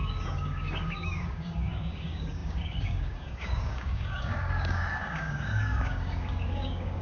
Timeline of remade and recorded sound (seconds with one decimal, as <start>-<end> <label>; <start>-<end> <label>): 0.0-7.0 remade